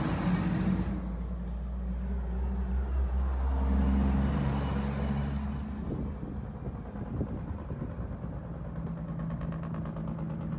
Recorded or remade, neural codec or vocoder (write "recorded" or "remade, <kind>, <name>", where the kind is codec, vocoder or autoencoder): recorded